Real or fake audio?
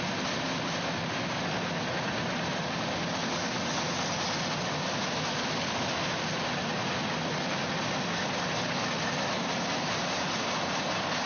real